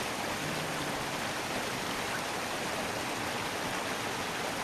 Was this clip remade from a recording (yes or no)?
no